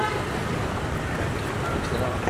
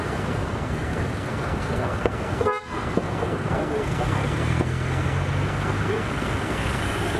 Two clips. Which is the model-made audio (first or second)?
second